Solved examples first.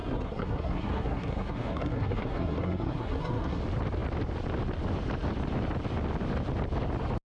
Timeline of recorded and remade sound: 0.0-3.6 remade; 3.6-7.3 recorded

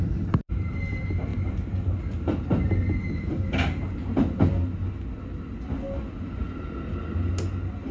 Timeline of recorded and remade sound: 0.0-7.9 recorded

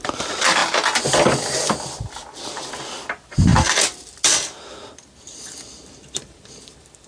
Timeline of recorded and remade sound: 0.0-7.1 recorded